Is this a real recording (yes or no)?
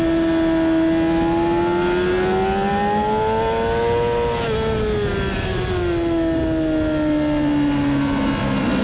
yes